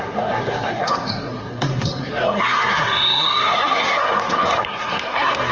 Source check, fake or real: fake